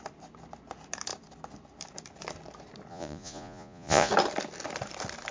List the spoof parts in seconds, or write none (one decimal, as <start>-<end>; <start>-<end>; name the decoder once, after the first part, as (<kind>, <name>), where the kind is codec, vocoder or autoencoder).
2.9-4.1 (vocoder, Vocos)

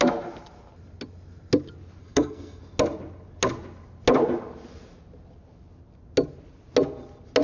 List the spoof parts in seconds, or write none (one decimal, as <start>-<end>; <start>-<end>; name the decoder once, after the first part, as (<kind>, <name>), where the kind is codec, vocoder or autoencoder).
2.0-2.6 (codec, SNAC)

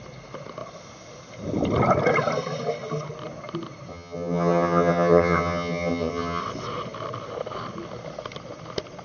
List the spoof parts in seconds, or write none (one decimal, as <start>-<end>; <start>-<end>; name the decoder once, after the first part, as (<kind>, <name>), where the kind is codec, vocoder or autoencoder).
3.9-6.4 (vocoder, HiFi-GAN)